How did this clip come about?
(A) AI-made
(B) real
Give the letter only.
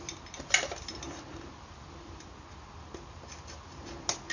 B